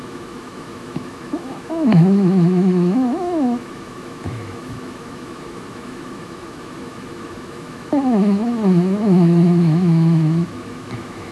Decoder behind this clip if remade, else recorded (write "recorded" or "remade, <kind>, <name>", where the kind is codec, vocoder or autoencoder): remade, autoencoder, DAC-VAE